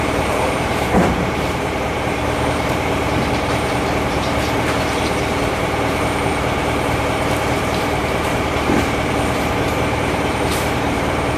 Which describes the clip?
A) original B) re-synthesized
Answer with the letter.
B